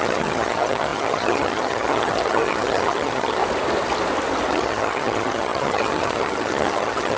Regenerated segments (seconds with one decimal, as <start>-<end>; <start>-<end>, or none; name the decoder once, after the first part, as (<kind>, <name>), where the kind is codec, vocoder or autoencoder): 0.0-3.4 (vocoder, HiFi-GAN); 4.5-7.2